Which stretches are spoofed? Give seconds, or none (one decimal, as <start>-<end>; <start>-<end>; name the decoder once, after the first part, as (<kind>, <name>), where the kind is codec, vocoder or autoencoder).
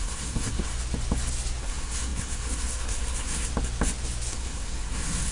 0.0-0.7 (codec, SNAC); 1.6-3.5; 4.3-5.3